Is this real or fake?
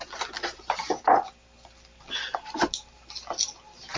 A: real